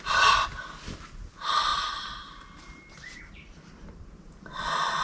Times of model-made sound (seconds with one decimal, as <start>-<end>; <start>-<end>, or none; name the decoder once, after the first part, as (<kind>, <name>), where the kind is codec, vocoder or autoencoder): 1.7-4.1 (vocoder, BigVGAN v2)

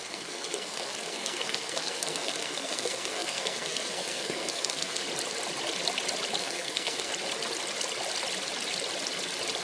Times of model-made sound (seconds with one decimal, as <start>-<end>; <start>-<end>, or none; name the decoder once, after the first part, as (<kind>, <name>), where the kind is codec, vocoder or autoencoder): 0.0-5.0 (codec, SNAC); 6.4-7.1

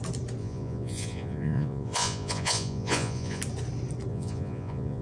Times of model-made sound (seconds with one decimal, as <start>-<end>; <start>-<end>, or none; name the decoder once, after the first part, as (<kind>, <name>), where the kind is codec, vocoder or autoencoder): 0.4-3.4 (vocoder, Vocos); 4.1-5.0

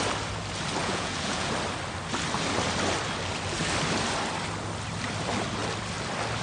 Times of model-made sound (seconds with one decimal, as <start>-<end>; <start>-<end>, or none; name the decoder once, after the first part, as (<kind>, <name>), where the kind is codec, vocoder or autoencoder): 0.8-1.5 (vocoder, Vocos)

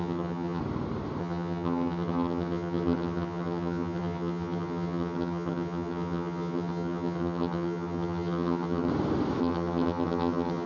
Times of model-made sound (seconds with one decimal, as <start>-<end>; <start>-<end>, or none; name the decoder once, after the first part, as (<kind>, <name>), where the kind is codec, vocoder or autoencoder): 0.0-0.6 (vocoder, HiFi-GAN); 1.2-8.9; 9.4-10.7

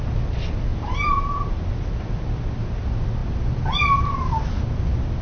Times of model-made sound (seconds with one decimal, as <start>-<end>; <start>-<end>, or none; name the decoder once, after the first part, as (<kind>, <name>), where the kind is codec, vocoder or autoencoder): 0.7-1.6 (vocoder, BigVGAN v2)

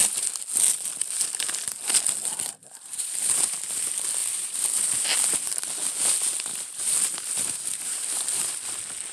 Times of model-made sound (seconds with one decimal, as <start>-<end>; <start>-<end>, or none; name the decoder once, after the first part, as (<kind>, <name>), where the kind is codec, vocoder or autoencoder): 2.6-3.7 (vocoder, BigVGAN v2); 4.2-5.6; 6.5-8.7

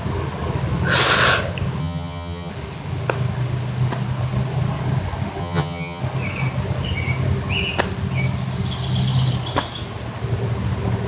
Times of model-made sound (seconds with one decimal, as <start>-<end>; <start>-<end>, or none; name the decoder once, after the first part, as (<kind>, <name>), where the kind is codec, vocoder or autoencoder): 1.8-2.5 (vocoder, HiFi-GAN); 5.4-6.0